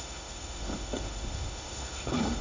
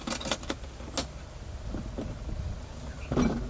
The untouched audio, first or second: second